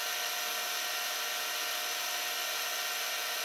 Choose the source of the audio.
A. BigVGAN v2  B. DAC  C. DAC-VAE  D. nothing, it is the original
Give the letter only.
D